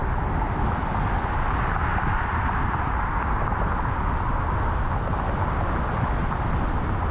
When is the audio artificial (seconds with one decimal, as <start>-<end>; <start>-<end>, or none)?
0.0-1.2